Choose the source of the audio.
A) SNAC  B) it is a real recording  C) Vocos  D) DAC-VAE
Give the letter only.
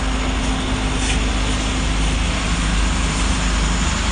B